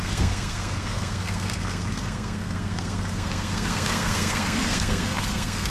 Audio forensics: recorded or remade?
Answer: remade